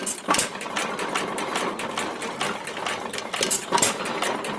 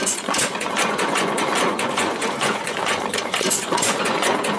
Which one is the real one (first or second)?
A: first